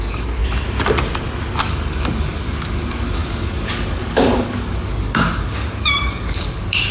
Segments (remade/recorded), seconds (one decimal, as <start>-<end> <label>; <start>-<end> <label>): 0.0-0.4 remade; 0.4-1.6 recorded; 1.6-6.9 remade